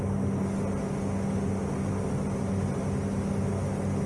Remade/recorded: recorded